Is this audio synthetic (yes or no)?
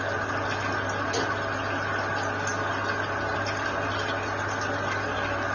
no